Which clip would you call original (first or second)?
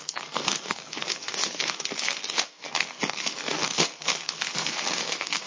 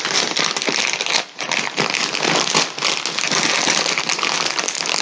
second